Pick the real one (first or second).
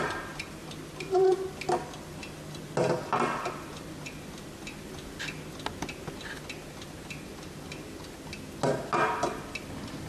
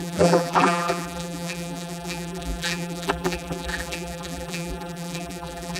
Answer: first